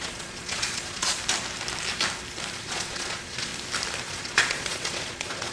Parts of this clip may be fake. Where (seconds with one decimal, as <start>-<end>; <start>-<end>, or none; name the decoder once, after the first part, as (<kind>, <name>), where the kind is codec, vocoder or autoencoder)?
0.0-1.2 (vocoder, Vocos); 2.5-3.5; 4.0-5.5